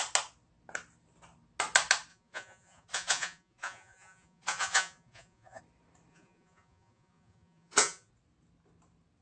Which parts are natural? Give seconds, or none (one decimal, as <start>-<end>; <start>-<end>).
0.0-2.1; 5.6-6.1; 8.1-9.2